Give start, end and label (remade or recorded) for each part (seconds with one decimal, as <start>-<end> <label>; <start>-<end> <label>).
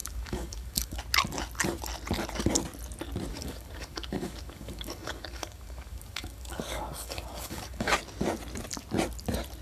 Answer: 0.0-1.0 remade; 1.0-3.3 recorded; 3.3-7.9 remade; 7.9-9.6 recorded